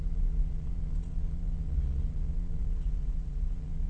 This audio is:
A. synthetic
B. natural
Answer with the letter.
A